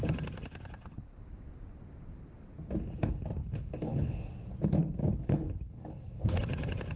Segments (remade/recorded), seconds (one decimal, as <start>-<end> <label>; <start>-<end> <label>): 0.0-3.4 recorded; 3.4-4.2 remade; 4.2-5.0 recorded; 5.0-6.4 remade; 6.4-7.0 recorded